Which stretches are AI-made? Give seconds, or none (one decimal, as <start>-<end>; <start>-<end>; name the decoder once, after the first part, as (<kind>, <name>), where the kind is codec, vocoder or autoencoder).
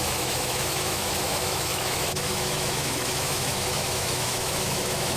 0.0-5.2 (autoencoder, DAC-VAE)